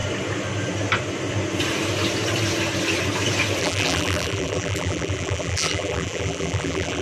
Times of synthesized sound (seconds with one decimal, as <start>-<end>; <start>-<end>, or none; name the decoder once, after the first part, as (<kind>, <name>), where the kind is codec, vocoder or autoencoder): 3.6-7.0 (vocoder, BigVGAN v2)